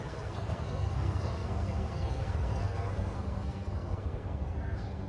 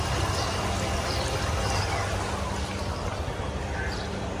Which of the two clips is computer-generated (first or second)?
first